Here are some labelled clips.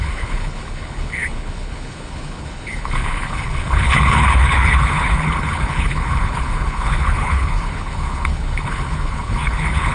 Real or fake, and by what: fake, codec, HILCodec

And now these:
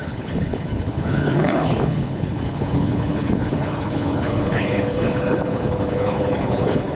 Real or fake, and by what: fake, codec, HILCodec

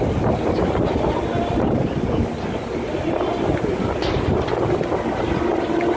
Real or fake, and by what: real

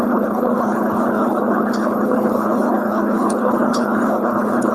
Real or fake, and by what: fake, codec, HILCodec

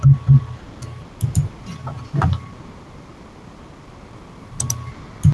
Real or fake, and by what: real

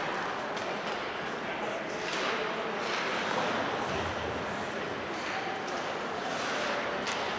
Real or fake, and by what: real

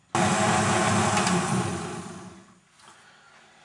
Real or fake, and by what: real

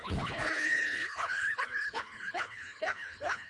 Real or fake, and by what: fake, codec, HILCodec